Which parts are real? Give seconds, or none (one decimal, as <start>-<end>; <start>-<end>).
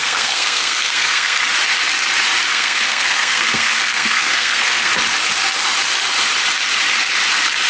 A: 1.4-2.5; 4.9-7.7